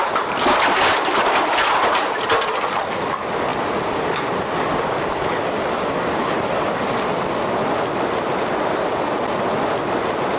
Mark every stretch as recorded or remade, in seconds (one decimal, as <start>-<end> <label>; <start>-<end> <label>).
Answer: 0.0-10.4 recorded